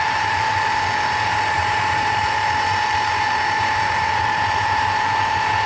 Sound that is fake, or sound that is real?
fake